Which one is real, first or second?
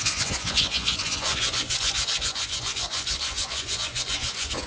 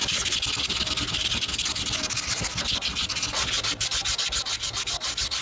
second